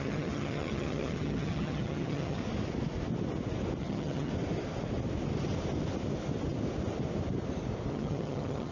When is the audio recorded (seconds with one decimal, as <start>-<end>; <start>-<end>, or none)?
2.4-3.8; 4.3-7.9

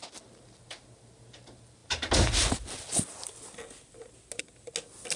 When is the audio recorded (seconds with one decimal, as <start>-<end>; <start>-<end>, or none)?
0.0-5.2

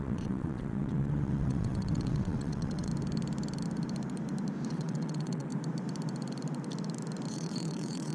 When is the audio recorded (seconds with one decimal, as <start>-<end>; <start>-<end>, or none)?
2.9-4.7; 5.5-7.3

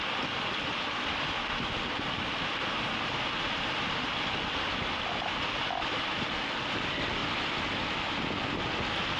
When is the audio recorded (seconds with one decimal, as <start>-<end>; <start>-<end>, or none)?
0.0-9.2

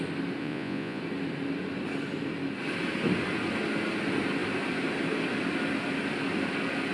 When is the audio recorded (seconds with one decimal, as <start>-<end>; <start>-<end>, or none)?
0.0-0.4; 1.0-6.9

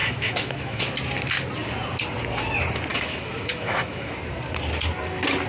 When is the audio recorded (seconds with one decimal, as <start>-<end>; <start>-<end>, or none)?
0.9-2.9; 4.1-5.5

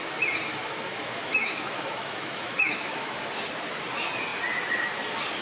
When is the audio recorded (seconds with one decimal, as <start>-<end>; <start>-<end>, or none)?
0.0-0.5; 3.3-5.4